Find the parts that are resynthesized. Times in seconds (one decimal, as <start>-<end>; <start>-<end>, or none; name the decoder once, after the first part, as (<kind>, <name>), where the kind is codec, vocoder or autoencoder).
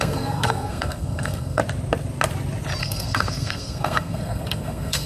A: 0.0-1.6 (codec, SNAC); 2.8-5.1